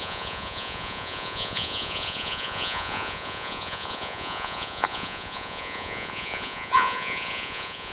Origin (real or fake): fake